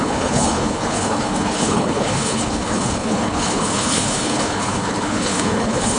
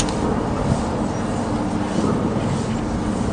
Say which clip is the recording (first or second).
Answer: second